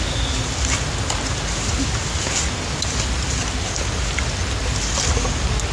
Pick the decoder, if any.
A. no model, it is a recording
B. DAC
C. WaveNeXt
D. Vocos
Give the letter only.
A